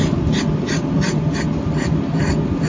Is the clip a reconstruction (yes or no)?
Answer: no